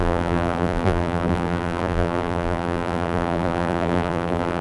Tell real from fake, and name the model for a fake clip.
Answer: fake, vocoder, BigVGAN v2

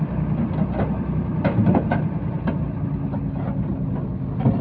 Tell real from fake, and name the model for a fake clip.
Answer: real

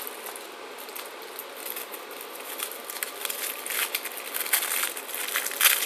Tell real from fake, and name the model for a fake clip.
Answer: real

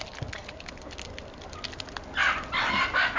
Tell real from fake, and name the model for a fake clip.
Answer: real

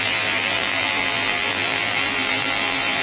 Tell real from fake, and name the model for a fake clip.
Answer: fake, vocoder, BigVGAN v2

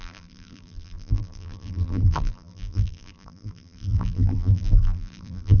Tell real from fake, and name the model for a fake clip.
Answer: fake, vocoder, BigVGAN v2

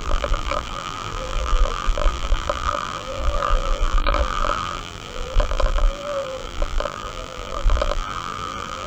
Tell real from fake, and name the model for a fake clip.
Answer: fake, vocoder, BigVGAN v2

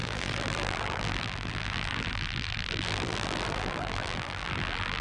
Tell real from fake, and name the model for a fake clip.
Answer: fake, vocoder, BigVGAN v2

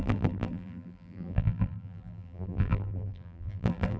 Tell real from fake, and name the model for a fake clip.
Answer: fake, vocoder, BigVGAN v2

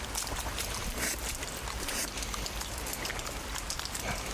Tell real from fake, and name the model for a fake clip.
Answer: real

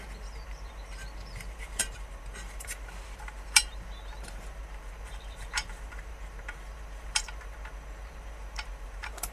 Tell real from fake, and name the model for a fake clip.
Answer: fake, vocoder, BigVGAN v2